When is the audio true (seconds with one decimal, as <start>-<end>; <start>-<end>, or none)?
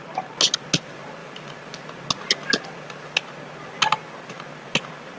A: 0.0-5.2